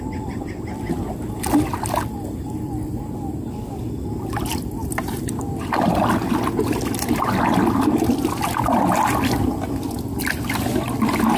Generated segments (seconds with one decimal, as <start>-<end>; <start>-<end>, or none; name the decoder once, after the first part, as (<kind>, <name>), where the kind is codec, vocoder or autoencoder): none

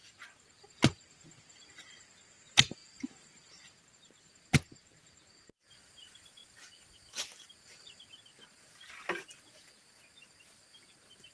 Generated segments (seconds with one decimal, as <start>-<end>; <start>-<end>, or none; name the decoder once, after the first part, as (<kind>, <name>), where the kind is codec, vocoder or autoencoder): 0.0-1.4 (vocoder, BigVGAN v2); 2.8-3.9

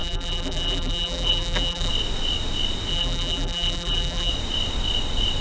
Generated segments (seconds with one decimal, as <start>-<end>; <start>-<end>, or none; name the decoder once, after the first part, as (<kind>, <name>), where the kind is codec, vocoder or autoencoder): 0.0-1.9 (vocoder, BigVGAN v2); 2.9-4.3

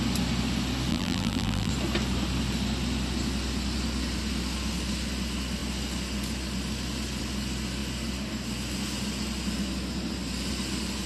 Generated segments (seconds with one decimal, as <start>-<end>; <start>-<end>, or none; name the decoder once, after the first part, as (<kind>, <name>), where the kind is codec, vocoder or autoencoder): 0.9-1.7 (vocoder, BigVGAN v2)